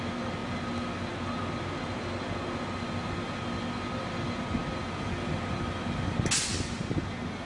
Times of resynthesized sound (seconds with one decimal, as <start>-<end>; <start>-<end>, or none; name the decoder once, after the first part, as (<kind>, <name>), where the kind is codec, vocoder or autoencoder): none